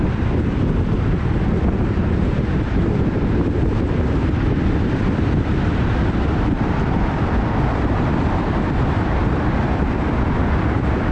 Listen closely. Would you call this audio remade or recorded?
remade